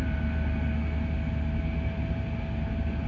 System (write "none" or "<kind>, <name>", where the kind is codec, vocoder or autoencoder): none